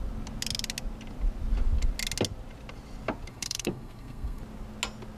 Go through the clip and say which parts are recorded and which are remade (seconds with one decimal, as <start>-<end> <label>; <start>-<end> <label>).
0.0-3.3 recorded; 3.3-4.4 remade; 4.4-5.2 recorded